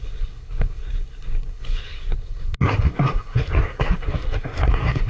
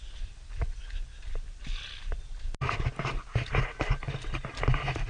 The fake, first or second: first